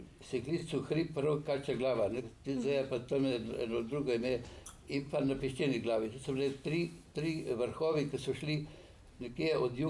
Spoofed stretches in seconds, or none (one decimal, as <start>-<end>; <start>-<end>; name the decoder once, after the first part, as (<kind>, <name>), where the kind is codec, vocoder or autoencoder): none